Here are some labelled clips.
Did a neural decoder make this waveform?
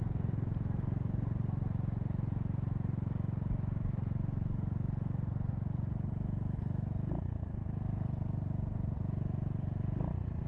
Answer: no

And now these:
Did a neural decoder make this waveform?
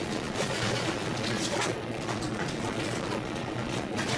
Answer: yes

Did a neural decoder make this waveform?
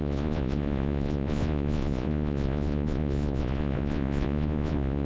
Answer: yes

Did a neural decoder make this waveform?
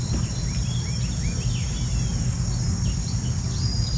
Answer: no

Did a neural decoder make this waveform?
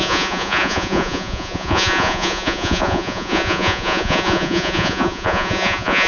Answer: yes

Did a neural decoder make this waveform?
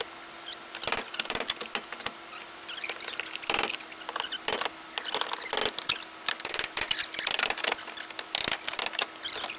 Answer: no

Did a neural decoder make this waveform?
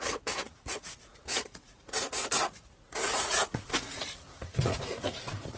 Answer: yes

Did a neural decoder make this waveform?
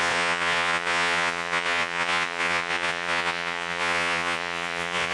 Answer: yes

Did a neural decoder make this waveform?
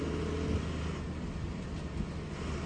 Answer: no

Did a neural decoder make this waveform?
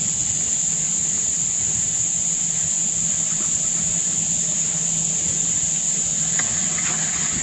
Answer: no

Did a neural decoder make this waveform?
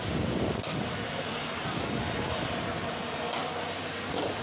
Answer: no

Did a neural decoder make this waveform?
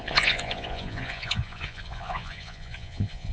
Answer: yes